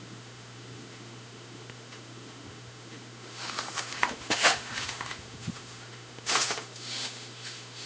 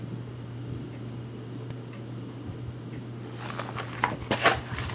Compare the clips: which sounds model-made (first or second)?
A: first